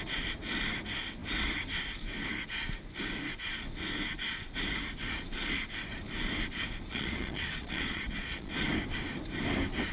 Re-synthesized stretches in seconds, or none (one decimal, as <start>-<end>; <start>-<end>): 6.9-8.5